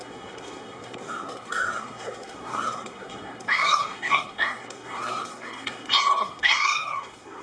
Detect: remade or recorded remade